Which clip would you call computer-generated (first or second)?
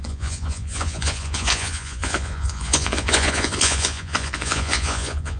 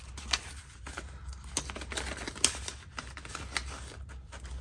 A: first